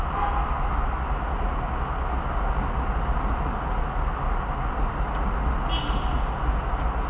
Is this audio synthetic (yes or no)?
no